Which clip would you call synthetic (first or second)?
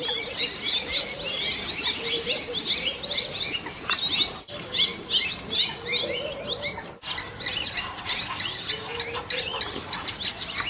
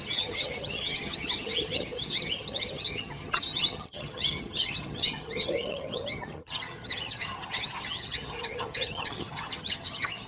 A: second